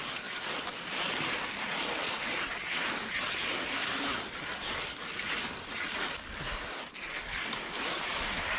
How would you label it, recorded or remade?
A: recorded